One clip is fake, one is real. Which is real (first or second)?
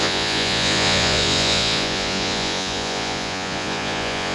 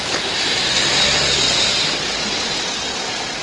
second